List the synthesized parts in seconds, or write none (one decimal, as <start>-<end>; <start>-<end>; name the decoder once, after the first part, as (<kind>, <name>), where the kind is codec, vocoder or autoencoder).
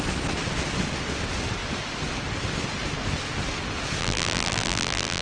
4.0-5.2 (vocoder, BigVGAN v2)